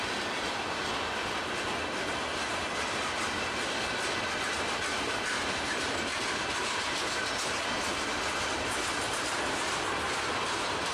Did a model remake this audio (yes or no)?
no